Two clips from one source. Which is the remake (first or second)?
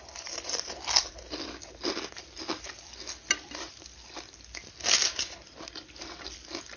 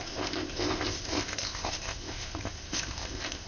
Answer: second